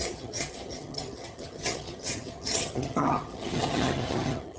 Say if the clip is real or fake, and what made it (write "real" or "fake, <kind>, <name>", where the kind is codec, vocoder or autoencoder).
fake, vocoder, HiFi-GAN